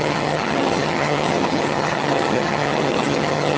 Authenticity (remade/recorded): remade